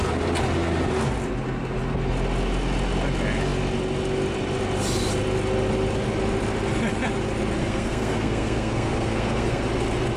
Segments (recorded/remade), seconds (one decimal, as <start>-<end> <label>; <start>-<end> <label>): 0.0-7.6 recorded; 7.6-9.6 remade; 9.6-10.2 recorded